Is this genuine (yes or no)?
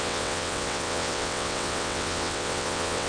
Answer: no